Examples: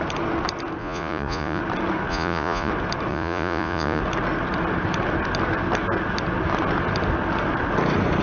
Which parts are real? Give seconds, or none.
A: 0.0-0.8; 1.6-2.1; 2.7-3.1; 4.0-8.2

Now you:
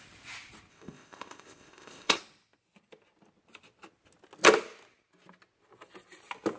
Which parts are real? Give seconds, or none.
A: 0.0-0.7; 2.2-6.6

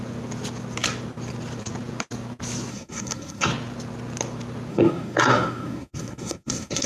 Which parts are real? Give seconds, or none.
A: 0.0-2.7; 3.5-4.7

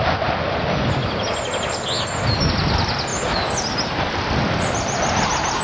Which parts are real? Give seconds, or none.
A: 0.0-5.6